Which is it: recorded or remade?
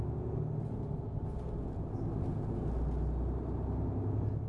recorded